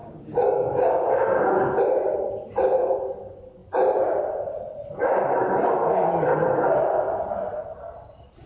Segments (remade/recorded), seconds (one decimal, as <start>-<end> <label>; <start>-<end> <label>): 0.0-1.8 remade; 1.8-8.5 recorded